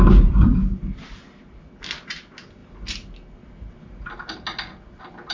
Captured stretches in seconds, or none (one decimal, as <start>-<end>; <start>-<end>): 0.0-5.3